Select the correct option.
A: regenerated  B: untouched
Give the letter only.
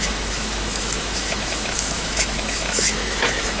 A